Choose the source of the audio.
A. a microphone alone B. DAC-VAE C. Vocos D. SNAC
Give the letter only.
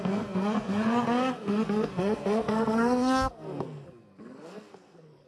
D